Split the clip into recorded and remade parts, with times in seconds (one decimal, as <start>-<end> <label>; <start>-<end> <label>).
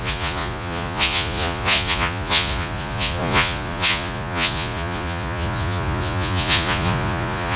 0.0-7.6 remade